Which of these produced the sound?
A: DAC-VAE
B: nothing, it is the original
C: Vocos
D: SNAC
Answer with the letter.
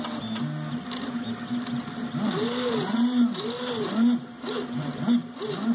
B